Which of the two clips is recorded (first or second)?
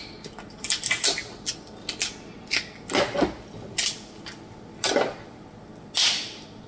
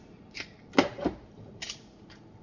first